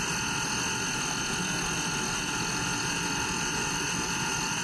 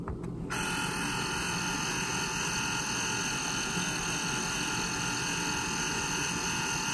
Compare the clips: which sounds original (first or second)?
second